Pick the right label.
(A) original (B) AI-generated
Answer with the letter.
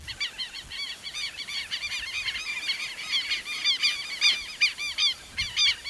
A